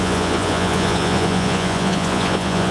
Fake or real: fake